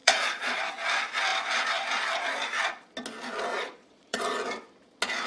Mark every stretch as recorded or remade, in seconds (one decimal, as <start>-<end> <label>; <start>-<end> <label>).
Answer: 0.0-0.6 remade; 0.6-3.5 recorded; 3.5-4.2 remade; 4.2-5.3 recorded